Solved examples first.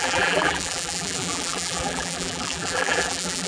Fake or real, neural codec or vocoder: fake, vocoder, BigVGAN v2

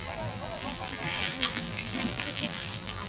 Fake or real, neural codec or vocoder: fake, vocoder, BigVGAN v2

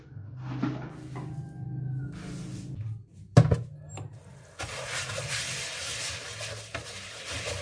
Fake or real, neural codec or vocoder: real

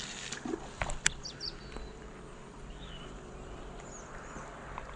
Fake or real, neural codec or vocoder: fake, vocoder, BigVGAN v2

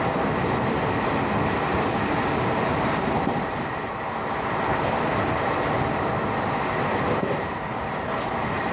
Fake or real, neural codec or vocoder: real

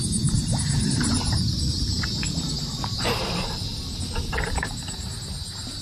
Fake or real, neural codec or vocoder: fake, vocoder, BigVGAN v2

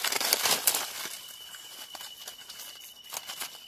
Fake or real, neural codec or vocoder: real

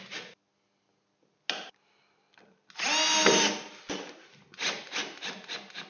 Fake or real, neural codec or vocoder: real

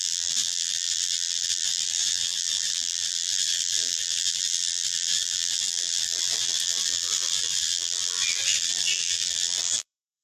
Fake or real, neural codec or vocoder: fake, vocoder, BigVGAN v2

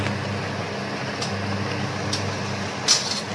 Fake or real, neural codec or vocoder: real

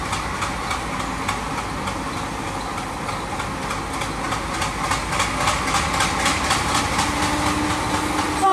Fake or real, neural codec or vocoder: real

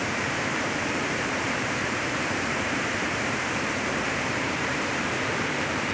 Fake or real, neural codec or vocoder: fake, vocoder, BigVGAN v2